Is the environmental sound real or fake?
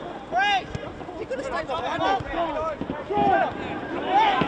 real